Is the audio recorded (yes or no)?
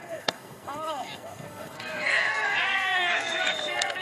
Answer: no